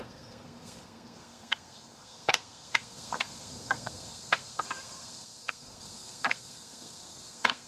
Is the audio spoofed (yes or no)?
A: yes